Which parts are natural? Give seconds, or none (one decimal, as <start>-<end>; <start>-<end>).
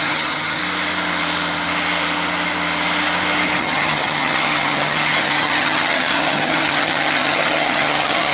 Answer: 0.6-3.6